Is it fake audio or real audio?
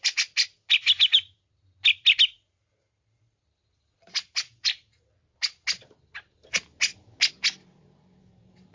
real